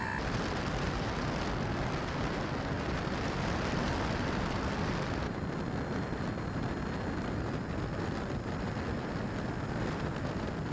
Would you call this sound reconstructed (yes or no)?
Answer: no